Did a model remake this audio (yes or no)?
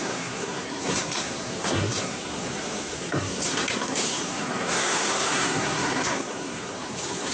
yes